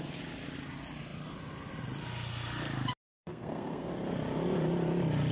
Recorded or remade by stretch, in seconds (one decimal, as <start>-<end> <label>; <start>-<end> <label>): 0.0-3.2 recorded; 3.2-3.9 remade; 3.9-5.3 recorded